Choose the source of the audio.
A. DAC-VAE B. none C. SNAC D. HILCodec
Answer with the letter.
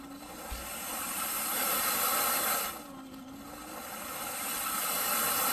B